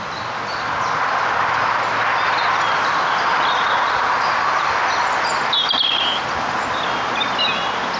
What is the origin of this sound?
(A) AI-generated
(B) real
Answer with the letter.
B